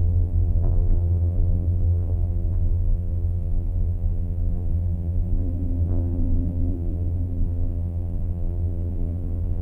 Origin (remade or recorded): remade